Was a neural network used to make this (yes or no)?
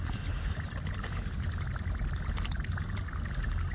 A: no